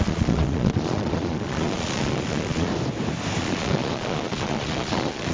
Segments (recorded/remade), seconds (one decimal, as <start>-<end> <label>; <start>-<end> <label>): 0.0-2.7 remade; 2.7-3.4 recorded; 3.4-5.3 remade